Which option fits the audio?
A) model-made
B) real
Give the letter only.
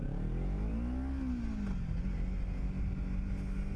B